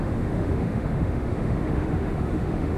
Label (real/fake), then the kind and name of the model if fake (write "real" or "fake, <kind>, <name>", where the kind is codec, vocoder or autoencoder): fake, autoencoder, DAC-VAE